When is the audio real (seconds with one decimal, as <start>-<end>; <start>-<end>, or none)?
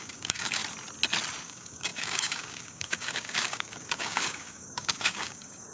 0.6-1.4